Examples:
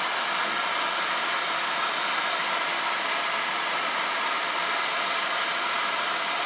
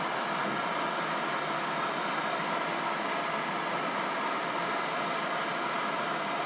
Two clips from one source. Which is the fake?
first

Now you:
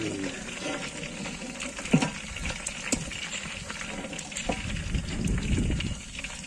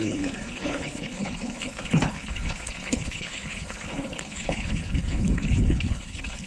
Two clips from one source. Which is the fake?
second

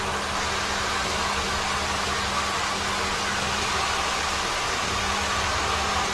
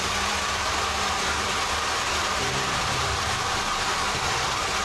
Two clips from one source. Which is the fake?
second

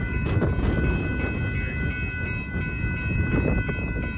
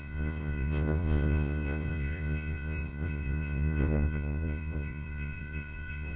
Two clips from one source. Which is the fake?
second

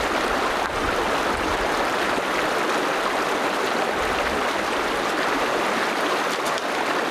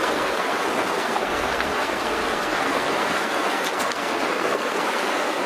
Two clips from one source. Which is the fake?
second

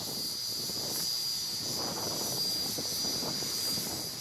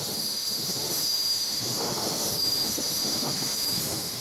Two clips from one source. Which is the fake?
second